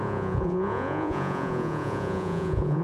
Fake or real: fake